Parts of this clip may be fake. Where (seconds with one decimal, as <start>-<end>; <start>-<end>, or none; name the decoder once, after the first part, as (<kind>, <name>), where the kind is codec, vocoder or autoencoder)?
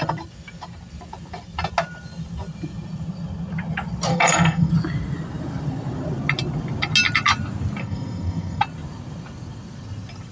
4.1-4.7 (codec, SNAC); 7.8-8.6